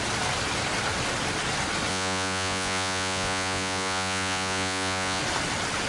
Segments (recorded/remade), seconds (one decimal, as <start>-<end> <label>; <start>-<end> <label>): 0.0-1.9 recorded; 1.9-5.2 remade; 5.2-5.9 recorded